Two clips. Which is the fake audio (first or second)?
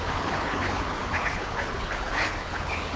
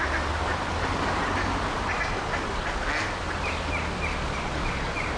first